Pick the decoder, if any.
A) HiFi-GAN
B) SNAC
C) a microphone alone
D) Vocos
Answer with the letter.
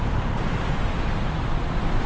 C